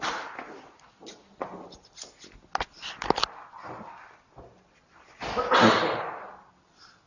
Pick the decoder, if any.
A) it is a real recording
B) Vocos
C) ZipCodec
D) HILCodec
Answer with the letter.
A